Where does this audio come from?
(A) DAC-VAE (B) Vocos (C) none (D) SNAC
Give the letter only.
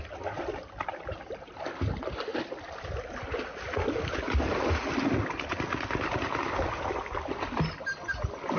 C